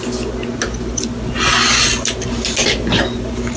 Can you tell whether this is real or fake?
real